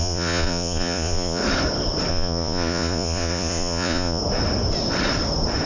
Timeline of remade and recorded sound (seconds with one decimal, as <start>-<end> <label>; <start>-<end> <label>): 0.0-1.4 remade; 1.4-2.1 recorded; 2.1-4.2 remade; 4.2-5.7 recorded

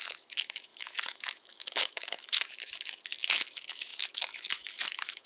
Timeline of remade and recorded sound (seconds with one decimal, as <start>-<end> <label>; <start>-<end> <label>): 0.0-5.3 remade